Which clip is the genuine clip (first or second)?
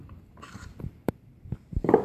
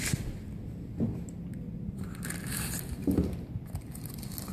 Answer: second